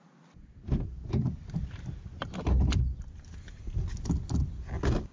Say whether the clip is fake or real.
real